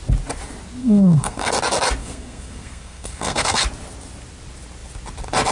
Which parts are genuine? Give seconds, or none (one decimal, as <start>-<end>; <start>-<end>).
0.0-0.8; 1.5-2.0; 3.6-5.5